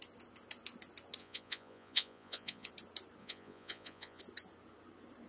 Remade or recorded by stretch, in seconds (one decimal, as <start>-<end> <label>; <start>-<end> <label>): 0.0-1.2 recorded; 1.2-2.7 remade; 2.7-3.2 recorded; 3.2-4.2 remade; 4.2-5.3 recorded